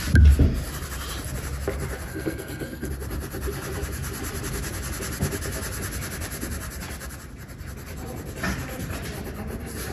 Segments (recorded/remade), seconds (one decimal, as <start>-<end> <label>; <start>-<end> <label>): 0.0-2.1 recorded; 2.1-2.9 remade; 2.9-9.9 recorded